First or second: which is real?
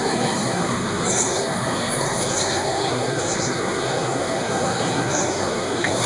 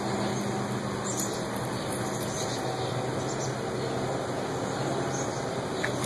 second